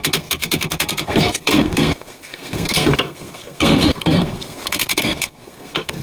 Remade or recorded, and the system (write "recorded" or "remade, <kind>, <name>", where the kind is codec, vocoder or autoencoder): remade, codec, SNAC